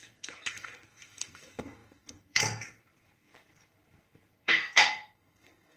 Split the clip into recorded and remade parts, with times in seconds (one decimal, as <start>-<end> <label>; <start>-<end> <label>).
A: 0.0-5.8 remade